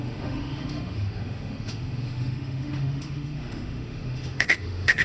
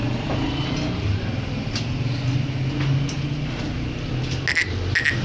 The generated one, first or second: first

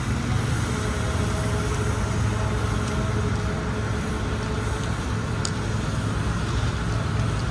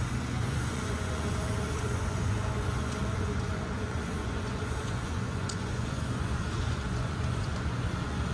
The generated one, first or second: second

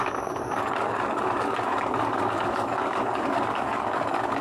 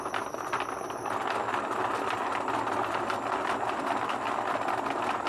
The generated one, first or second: first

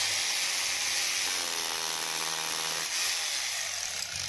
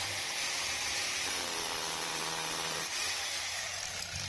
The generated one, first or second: second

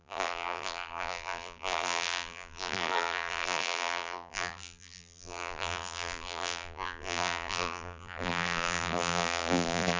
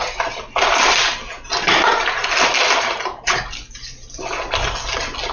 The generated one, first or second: first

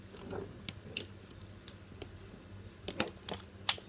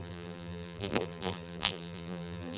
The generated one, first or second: second